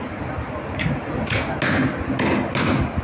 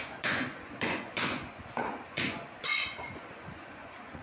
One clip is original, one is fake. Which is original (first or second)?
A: first